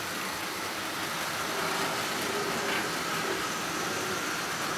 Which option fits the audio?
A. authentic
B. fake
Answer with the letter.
A